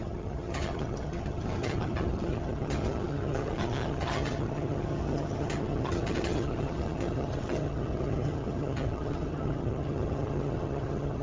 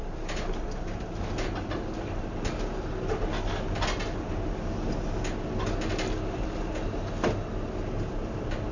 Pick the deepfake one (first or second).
first